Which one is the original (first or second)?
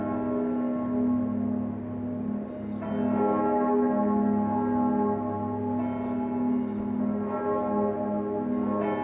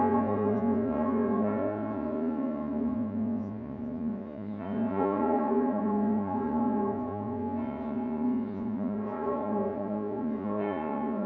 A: first